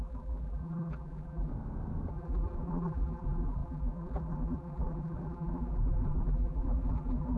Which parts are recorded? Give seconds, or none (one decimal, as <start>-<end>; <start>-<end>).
1.5-2.1